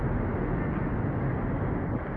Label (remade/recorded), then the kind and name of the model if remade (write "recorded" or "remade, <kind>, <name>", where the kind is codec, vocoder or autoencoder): recorded